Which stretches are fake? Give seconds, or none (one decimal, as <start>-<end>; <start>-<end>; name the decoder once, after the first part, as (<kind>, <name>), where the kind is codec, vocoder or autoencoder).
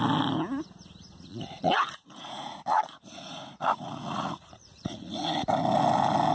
1.3-5.1 (vocoder, Vocos)